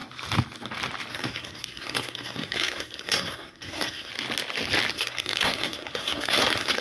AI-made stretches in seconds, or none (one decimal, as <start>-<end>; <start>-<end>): 1.1-4.1; 4.9-6.8

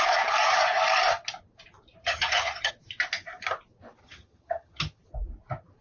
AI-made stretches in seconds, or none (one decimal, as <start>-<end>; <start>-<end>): 2.0-2.7; 4.0-5.0